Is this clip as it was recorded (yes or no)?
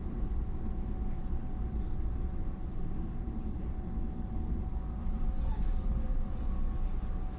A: yes